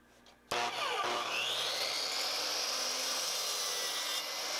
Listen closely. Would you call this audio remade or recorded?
recorded